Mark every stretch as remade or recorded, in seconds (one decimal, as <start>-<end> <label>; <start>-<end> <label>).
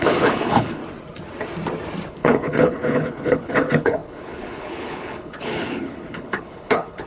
0.0-0.8 remade; 0.8-2.1 recorded; 2.1-7.1 remade